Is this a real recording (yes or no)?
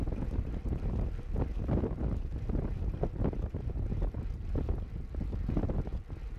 yes